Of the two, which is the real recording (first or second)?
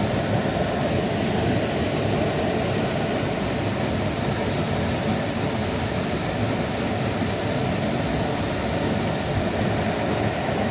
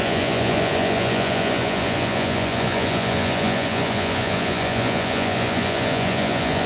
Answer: first